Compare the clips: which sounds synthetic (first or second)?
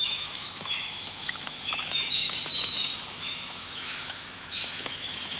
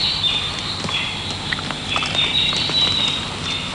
first